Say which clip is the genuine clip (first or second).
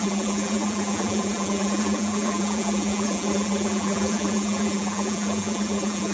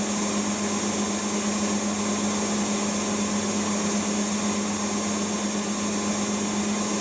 second